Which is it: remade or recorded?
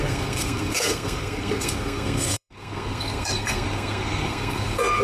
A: remade